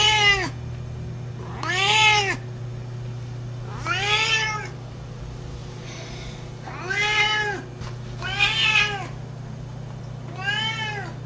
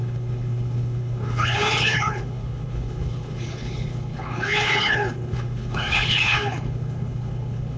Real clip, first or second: first